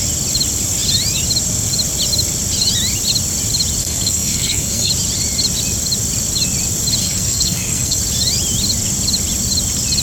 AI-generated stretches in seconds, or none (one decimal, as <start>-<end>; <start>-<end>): 3.8-4.9; 7.0-8.0